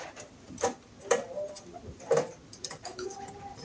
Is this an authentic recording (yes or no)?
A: yes